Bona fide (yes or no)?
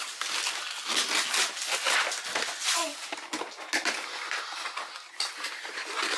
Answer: yes